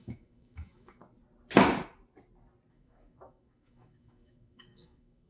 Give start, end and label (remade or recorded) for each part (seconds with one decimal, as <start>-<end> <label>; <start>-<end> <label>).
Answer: 0.0-1.0 remade; 1.0-2.7 recorded; 2.7-5.3 remade